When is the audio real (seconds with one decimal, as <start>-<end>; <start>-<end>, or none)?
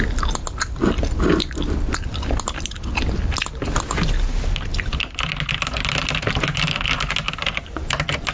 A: 0.0-8.3